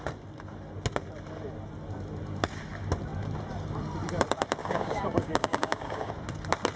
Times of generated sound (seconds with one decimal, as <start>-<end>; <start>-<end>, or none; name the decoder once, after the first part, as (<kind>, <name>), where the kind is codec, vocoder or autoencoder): 4.6-6.1 (codec, DAC)